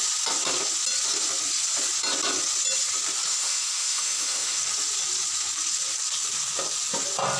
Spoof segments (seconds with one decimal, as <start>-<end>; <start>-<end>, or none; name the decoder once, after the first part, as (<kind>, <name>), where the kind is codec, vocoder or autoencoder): 3.3-4.6 (autoencoder, DAC-VAE)